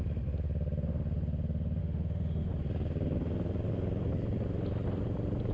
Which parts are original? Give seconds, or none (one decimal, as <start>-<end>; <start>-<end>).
0.0-1.8; 2.5-5.5